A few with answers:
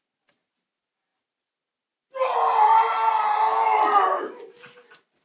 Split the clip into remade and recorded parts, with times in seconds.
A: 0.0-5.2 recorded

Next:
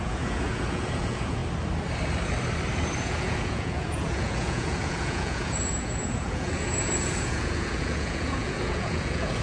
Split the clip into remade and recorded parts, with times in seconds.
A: 0.0-1.4 remade; 1.4-3.0 recorded; 3.0-9.4 remade

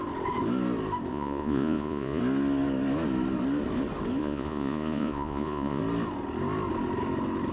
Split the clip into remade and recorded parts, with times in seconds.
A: 0.0-1.1 recorded; 1.1-2.2 remade; 2.2-4.2 recorded; 4.2-5.8 remade; 5.8-7.5 recorded

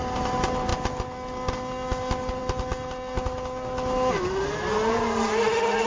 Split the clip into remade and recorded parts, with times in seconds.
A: 0.0-5.9 recorded